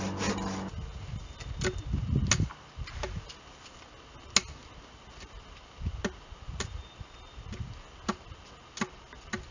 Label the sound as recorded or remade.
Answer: recorded